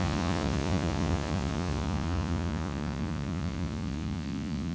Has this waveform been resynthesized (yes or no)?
yes